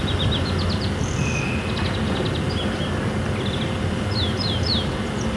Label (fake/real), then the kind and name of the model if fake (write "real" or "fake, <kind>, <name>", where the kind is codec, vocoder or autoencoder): real